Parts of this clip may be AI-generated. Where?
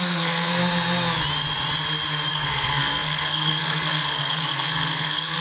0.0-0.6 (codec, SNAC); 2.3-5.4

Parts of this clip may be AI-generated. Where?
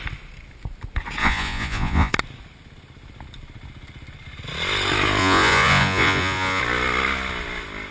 1.2-2.1 (vocoder, Vocos); 5.2-6.6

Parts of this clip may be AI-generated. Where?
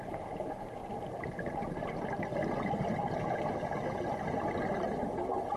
none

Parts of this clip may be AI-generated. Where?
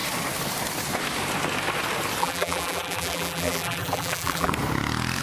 2.2-4.5 (vocoder, BigVGAN v2)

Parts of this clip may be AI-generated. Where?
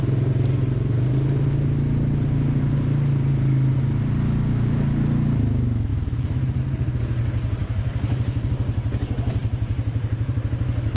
5.9-6.6 (vocoder, BigVGAN v2); 7.6-8.5; 9.4-10.4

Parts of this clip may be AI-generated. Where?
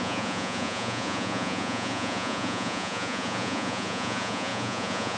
0.0-5.2 (vocoder, Vocos)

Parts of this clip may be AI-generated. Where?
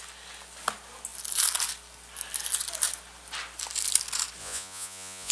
4.4-5.3 (vocoder, Vocos)